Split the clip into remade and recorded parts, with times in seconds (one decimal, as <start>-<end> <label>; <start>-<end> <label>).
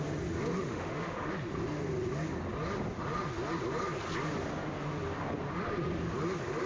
0.0-0.5 recorded; 0.5-1.3 remade; 1.3-6.7 recorded